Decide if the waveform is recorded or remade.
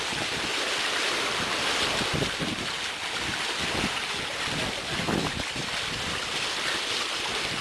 recorded